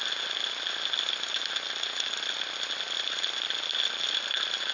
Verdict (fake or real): real